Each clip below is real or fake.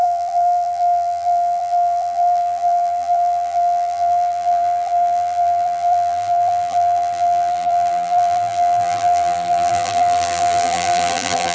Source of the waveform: fake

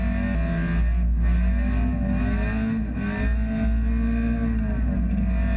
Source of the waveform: real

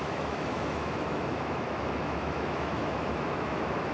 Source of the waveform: fake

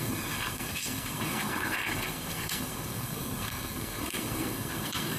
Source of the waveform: fake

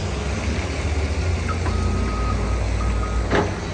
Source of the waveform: real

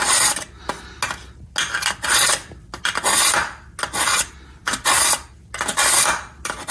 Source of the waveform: real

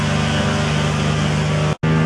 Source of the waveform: real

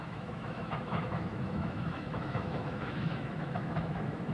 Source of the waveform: fake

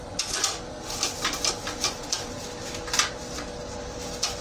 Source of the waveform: real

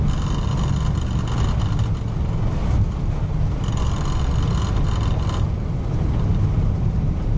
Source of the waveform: real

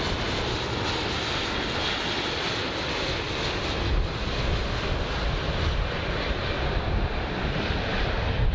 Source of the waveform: real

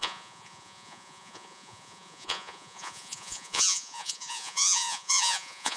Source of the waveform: fake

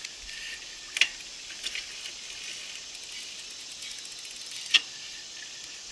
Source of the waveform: real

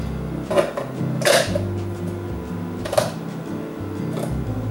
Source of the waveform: real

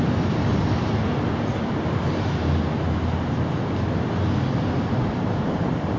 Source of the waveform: real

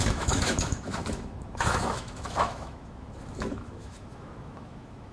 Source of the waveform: fake